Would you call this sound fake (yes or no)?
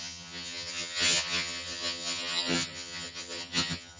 yes